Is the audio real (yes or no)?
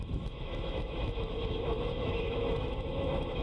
no